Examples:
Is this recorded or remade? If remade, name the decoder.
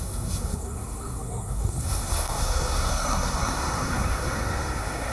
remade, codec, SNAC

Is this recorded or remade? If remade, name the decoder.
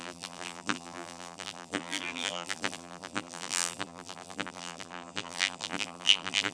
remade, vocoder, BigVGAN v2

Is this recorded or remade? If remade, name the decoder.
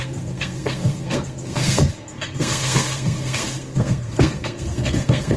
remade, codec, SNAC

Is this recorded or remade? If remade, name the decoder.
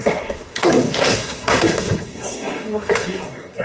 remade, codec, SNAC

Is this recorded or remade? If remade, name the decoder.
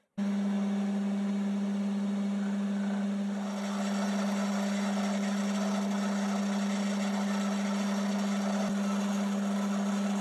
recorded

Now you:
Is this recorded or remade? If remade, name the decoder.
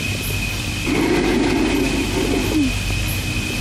recorded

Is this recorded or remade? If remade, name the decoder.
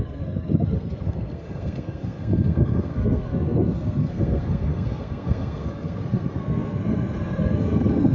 remade, codec, SNAC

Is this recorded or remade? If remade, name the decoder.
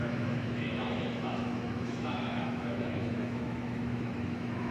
remade, autoencoder, DAC-VAE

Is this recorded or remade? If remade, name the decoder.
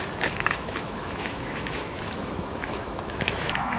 remade, autoencoder, DAC-VAE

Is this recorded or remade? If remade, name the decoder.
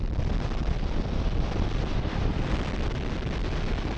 recorded